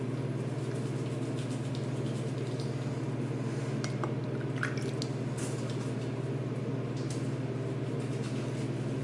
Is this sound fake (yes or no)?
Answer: no